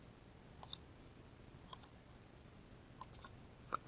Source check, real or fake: real